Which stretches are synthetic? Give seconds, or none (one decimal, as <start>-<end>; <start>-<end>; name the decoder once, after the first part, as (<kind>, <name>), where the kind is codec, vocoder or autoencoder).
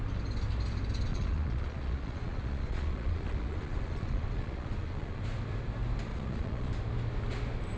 1.1-5.2 (vocoder, Vocos); 6.1-6.7